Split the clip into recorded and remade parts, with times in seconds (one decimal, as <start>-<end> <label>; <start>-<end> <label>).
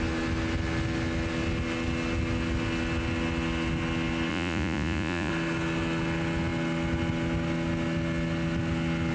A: 0.0-4.3 recorded; 4.3-5.3 remade; 5.3-9.1 recorded